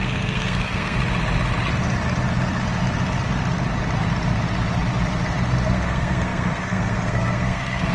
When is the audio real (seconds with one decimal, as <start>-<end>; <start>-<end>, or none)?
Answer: 1.0-5.7